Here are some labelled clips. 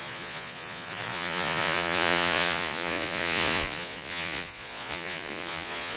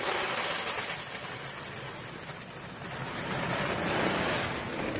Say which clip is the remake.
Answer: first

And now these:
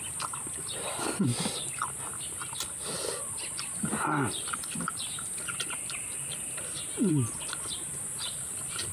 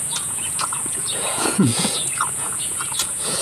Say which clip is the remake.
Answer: second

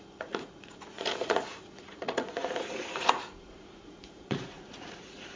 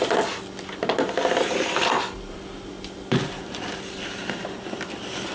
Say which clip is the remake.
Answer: first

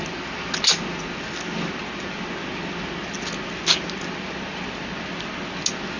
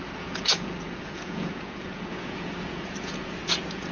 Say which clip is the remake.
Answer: second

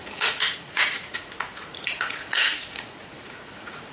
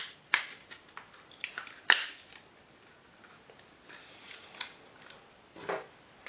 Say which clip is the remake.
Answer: first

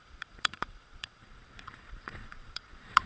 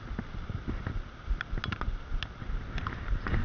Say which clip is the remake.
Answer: first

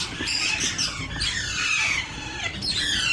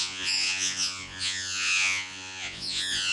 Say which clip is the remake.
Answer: second